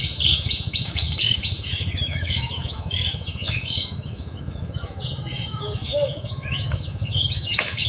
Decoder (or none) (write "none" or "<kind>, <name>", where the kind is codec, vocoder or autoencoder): autoencoder, DAC-VAE